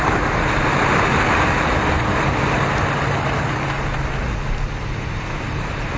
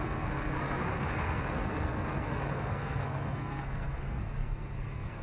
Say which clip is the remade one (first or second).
second